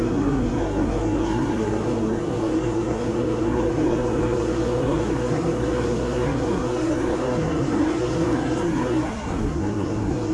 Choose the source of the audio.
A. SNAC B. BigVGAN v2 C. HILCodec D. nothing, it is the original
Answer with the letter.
A